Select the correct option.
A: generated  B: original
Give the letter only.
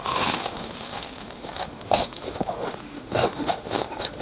A